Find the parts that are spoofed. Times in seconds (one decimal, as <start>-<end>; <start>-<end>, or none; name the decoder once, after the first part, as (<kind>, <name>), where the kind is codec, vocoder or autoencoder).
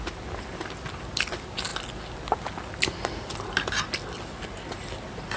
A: none